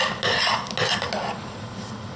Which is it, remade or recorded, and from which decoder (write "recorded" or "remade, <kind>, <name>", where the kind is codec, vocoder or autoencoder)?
recorded